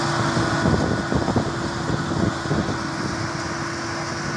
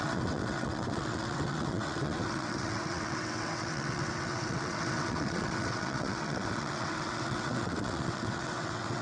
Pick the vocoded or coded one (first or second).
second